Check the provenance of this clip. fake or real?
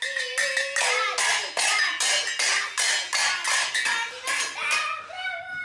real